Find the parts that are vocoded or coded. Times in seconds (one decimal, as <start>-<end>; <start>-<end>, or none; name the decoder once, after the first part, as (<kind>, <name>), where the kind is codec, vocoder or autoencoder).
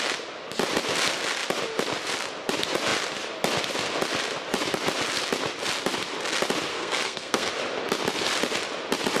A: 6.7-7.5 (codec, SNAC)